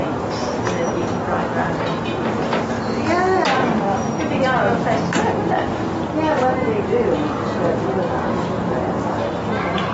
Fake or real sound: real